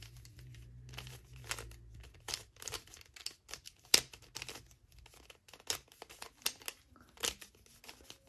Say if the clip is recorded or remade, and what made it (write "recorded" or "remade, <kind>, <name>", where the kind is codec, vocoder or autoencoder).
recorded